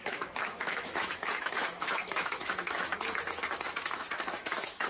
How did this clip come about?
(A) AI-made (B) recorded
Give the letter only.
A